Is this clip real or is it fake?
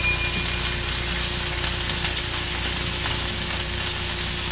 real